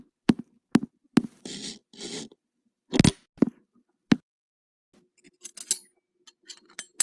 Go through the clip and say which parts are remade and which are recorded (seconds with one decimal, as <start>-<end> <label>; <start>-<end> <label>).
0.0-7.0 recorded